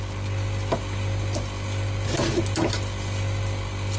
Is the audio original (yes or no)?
yes